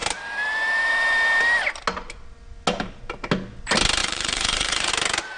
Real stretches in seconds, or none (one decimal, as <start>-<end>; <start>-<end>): 0.0-4.0; 4.9-5.4